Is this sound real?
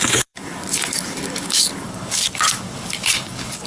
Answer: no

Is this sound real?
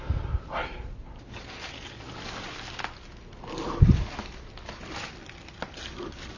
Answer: yes